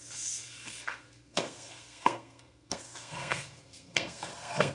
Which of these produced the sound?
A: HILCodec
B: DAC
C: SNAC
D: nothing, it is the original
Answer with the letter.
C